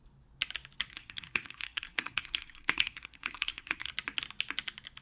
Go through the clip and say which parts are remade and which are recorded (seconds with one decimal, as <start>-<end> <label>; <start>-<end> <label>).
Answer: 0.0-0.9 recorded; 0.9-3.9 remade; 3.9-5.0 recorded